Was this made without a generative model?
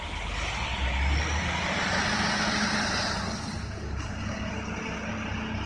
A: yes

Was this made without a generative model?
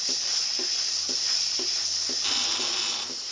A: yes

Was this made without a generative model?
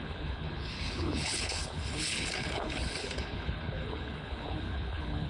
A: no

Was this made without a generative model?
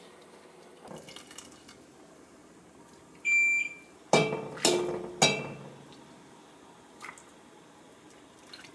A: yes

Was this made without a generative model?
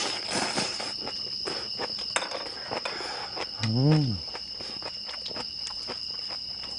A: yes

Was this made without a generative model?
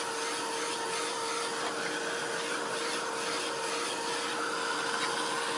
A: yes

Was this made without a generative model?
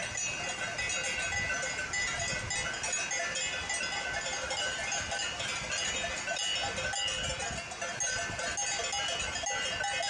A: yes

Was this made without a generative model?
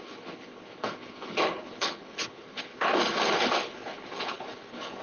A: no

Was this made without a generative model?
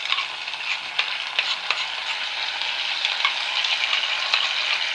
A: yes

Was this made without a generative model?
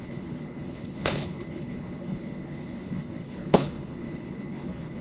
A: no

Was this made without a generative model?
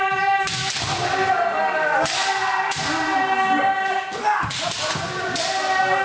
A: yes